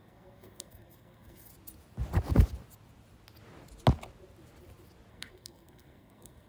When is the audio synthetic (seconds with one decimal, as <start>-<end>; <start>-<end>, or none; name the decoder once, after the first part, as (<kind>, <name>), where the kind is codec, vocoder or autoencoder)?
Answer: 0.0-1.5 (codec, SNAC); 5.1-6.5